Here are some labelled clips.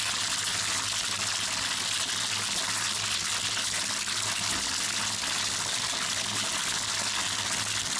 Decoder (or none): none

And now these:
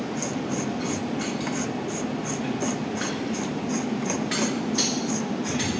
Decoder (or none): none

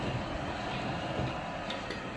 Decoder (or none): none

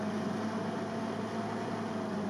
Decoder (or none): none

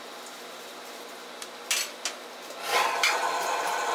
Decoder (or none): none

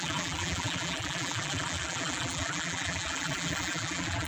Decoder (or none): vocoder, BigVGAN v2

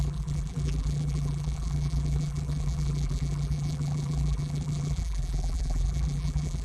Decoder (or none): vocoder, BigVGAN v2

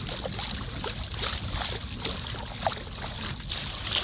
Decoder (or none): none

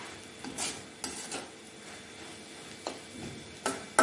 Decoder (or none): none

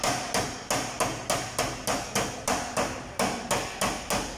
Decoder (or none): none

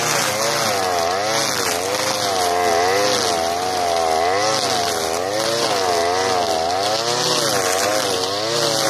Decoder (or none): none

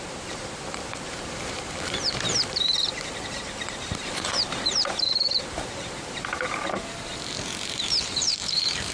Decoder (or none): vocoder, BigVGAN v2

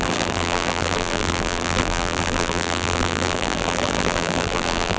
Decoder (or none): vocoder, BigVGAN v2